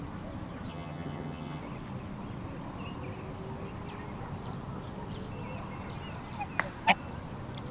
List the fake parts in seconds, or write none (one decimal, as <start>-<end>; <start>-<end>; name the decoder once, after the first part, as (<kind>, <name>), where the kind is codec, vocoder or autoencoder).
0.7-1.6 (vocoder, HiFi-GAN)